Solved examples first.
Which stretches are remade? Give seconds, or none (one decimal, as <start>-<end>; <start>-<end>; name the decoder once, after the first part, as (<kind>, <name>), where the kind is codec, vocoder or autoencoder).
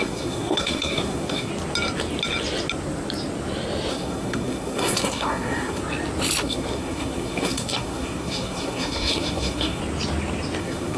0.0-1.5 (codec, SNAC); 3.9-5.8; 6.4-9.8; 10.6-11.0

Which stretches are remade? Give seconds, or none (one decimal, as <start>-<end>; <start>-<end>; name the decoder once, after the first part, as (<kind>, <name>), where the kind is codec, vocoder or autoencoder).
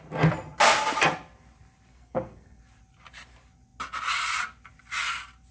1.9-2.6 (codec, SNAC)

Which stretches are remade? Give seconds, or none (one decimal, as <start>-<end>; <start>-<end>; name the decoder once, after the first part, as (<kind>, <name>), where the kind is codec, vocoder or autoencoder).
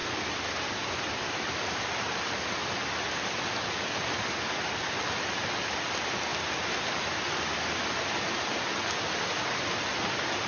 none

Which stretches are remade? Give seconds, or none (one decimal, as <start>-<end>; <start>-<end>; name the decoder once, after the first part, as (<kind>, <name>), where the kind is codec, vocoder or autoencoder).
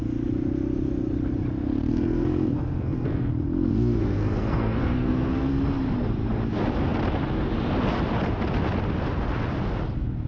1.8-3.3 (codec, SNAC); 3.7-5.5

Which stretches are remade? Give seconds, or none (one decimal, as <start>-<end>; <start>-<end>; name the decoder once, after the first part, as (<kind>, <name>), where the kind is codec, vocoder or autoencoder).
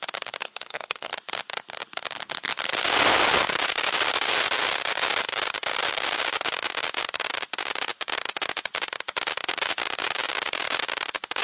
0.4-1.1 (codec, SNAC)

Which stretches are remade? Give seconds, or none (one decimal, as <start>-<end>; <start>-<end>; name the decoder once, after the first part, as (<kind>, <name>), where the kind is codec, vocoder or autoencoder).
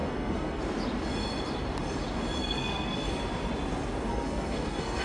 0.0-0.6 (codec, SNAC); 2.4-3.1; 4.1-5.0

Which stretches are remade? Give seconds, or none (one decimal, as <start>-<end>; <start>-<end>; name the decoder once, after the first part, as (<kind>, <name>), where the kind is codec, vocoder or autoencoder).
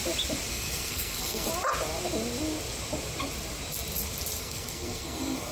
0.5-1.5 (codec, SNAC); 4.4-5.5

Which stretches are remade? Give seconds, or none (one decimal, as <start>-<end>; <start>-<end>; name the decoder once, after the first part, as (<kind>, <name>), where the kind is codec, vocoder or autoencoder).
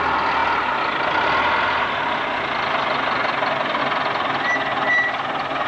none